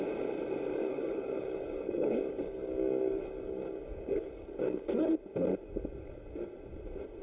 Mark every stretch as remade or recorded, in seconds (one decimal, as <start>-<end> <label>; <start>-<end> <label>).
0.0-0.7 recorded; 0.7-5.0 remade; 5.0-7.2 recorded